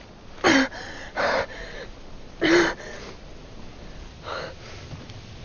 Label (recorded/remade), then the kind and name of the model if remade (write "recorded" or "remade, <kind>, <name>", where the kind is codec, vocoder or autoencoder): recorded